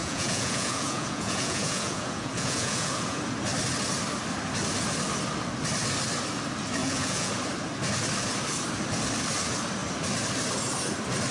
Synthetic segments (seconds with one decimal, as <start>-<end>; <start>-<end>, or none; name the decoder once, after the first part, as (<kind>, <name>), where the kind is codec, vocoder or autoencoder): 0.0-3.2 (vocoder, Vocos); 6.8-7.3